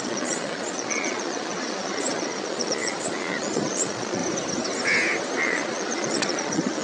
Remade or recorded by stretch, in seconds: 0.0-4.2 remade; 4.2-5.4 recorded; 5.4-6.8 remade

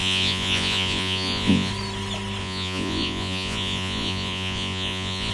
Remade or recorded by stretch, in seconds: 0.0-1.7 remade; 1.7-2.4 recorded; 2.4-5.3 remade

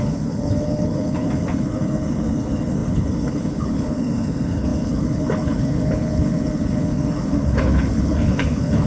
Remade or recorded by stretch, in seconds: 0.0-8.9 remade

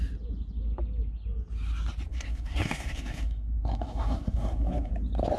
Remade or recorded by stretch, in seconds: 0.0-2.1 recorded; 2.1-4.9 remade; 4.9-5.4 recorded